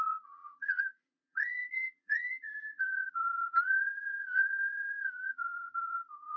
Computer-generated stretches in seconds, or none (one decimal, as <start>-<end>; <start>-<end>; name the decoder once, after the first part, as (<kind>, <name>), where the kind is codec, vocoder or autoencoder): 0.0-6.4 (vocoder, Vocos)